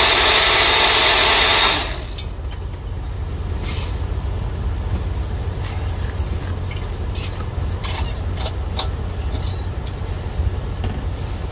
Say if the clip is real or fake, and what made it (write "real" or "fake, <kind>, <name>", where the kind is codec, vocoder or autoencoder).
real